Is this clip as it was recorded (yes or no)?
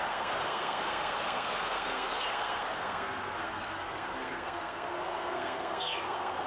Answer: no